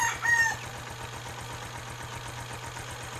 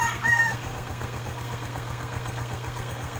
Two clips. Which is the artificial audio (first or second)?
second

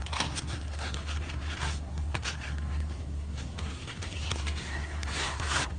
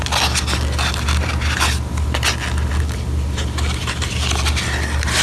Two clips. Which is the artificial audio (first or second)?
first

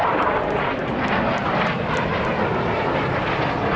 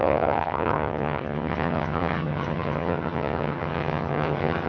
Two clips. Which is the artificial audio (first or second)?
second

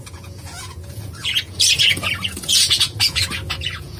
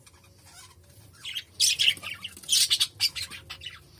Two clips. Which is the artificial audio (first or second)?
first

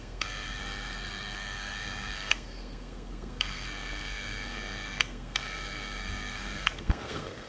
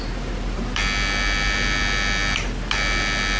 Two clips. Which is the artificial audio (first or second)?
first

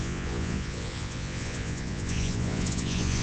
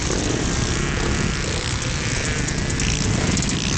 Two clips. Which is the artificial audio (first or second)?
first